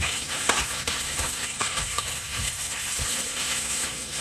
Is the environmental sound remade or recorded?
remade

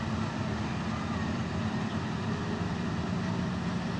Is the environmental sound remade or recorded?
recorded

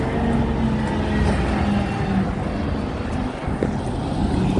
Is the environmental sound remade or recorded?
recorded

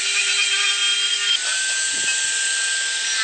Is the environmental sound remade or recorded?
recorded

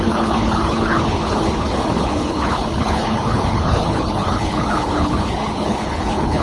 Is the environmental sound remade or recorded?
remade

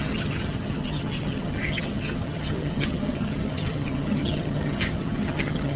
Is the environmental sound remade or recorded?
remade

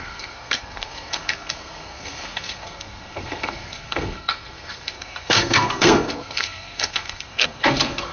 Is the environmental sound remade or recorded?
remade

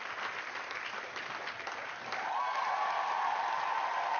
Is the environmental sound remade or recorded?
recorded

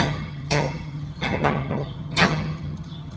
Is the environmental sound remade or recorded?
remade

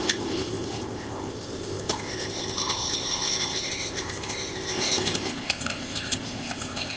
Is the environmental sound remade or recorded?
remade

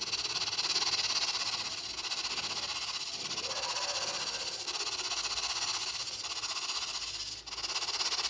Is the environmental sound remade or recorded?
recorded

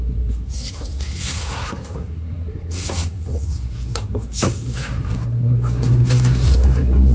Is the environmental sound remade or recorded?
remade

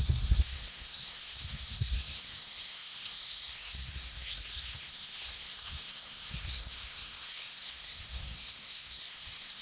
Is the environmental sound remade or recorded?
remade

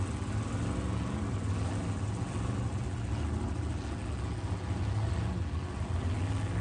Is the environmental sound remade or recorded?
recorded